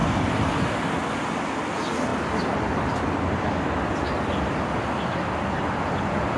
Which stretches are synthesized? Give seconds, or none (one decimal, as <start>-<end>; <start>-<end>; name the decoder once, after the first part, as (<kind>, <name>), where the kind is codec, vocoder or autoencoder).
0.0-0.7 (vocoder, BigVGAN v2); 2.1-5.9